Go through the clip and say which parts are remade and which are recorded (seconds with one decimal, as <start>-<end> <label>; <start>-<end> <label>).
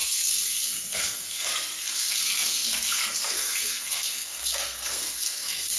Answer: 0.0-5.8 remade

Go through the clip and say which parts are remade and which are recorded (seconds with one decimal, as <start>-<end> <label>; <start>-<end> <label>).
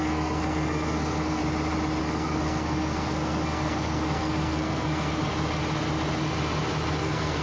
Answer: 0.0-1.4 remade; 1.4-2.0 recorded; 2.0-5.1 remade; 5.1-7.0 recorded; 7.0-7.4 remade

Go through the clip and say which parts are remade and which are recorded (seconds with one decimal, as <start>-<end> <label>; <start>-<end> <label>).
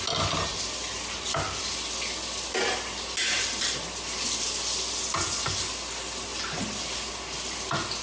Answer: 0.0-8.0 recorded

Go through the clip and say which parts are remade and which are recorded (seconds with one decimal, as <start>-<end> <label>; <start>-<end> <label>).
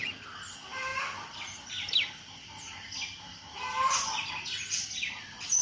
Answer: 0.0-5.6 recorded